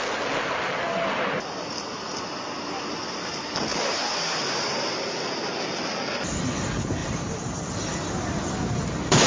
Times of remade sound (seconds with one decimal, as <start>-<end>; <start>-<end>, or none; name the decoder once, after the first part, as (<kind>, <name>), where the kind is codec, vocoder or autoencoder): 7.0-8.5 (vocoder, BigVGAN v2)